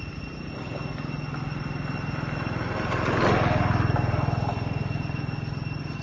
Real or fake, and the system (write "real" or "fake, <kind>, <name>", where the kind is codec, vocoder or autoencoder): real